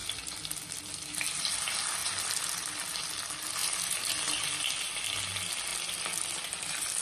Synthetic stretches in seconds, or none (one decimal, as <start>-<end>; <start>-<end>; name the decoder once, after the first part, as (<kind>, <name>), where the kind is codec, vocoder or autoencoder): 2.0-2.8 (vocoder, BigVGAN v2); 5.7-7.0